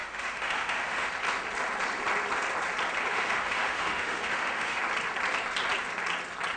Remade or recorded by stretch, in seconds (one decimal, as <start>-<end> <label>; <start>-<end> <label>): 0.0-1.1 remade; 1.1-3.1 recorded; 3.1-4.8 remade; 4.8-6.6 recorded